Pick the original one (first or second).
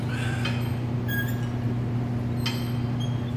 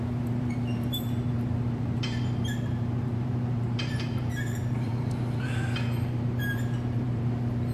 first